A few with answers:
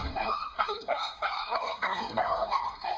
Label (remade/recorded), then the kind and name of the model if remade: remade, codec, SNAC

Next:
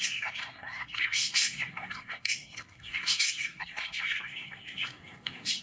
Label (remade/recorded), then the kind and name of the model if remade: remade, codec, SNAC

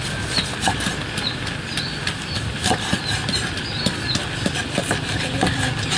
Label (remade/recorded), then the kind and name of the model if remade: recorded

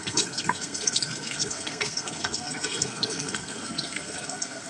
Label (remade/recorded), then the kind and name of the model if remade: remade, codec, SNAC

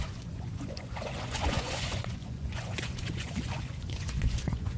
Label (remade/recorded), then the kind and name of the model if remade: remade, vocoder, Vocos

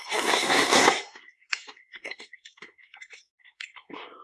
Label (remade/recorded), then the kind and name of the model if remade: remade, codec, SNAC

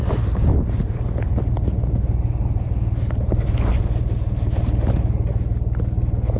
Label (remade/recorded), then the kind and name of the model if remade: recorded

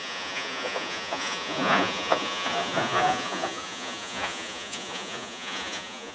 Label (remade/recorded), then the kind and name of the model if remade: remade, vocoder, Vocos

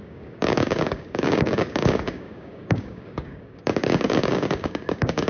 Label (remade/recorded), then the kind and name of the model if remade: remade, codec, DAC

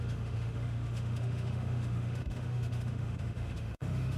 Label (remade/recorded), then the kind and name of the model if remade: remade, autoencoder, DAC-VAE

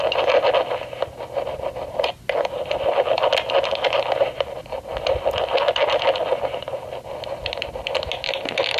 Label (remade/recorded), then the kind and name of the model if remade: recorded